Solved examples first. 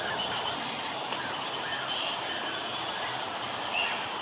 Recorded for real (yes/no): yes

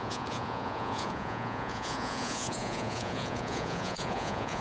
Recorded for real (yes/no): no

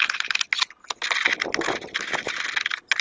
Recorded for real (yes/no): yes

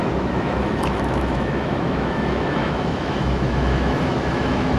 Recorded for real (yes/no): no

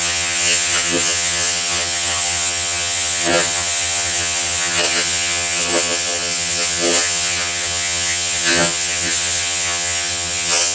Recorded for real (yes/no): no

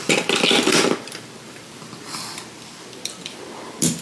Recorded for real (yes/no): no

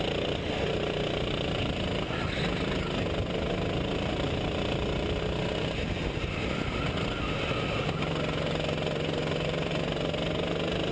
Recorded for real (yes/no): yes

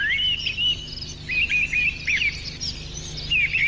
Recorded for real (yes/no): yes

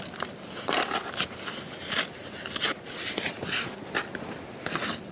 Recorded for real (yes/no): yes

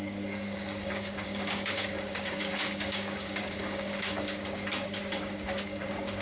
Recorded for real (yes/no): no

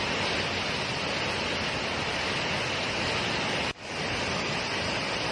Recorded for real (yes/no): yes